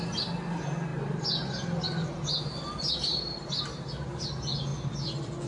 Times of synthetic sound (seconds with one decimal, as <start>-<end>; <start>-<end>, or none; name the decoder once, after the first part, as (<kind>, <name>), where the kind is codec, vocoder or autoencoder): none